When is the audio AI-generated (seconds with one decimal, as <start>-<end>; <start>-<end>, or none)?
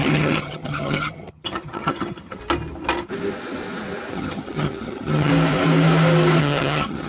0.0-2.4; 4.1-5.3; 6.4-7.1